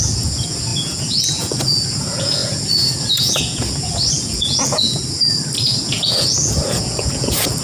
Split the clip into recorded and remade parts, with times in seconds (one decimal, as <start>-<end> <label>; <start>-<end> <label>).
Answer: 0.0-5.0 remade; 5.0-5.6 recorded; 5.6-7.6 remade